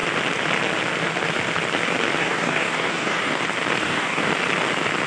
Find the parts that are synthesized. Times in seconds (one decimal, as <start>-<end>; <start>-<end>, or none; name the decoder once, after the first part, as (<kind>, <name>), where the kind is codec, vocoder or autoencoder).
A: 2.2-3.4 (codec, DAC); 3.8-4.3